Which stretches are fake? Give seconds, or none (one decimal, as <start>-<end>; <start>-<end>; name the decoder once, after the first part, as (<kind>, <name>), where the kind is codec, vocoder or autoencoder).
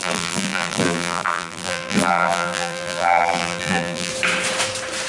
0.0-4.1 (vocoder, BigVGAN v2)